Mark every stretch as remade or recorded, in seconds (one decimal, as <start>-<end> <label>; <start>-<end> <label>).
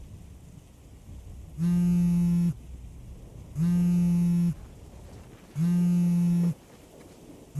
0.0-7.6 recorded